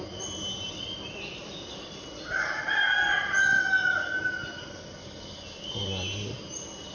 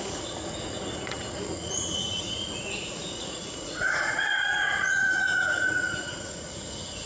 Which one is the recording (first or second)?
first